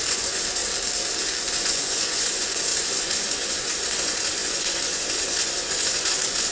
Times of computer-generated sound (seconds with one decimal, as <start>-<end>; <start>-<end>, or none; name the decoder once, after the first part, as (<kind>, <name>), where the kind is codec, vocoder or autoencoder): 0.0-0.6 (vocoder, Vocos); 1.5-6.5